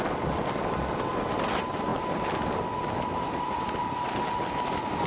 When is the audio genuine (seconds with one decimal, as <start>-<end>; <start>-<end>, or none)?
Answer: 0.0-5.1